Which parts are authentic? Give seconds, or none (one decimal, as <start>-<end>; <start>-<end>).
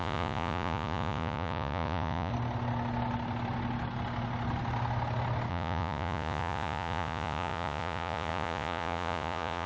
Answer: 2.3-5.5